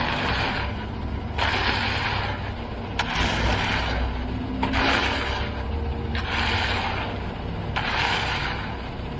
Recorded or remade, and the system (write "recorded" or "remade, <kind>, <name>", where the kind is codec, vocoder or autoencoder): recorded